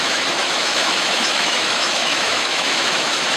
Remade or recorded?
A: remade